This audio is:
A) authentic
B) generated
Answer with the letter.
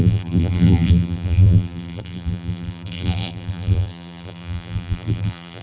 B